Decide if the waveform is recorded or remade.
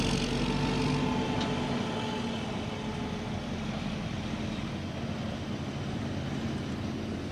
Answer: recorded